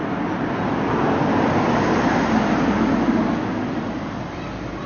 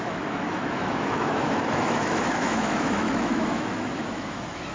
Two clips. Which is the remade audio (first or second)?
second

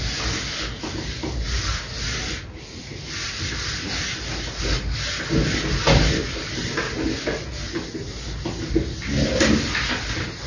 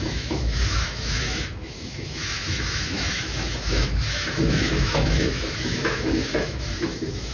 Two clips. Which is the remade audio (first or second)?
second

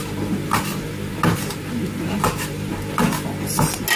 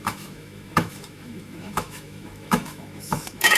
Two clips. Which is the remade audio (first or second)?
second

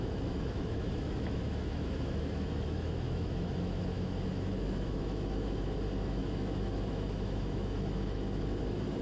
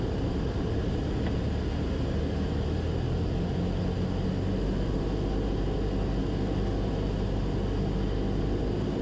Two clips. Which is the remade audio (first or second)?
first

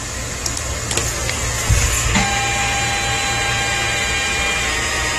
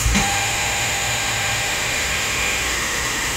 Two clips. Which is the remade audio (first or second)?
second